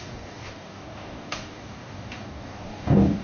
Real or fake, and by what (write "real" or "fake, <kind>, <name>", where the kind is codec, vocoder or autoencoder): fake, codec, DAC